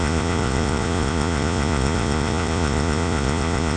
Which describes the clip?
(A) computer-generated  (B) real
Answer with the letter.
A